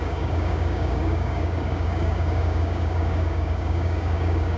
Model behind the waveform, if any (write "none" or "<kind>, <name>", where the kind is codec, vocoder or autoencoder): codec, DAC